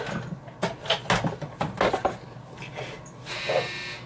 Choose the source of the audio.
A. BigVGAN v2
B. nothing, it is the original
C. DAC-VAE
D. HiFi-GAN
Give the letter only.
B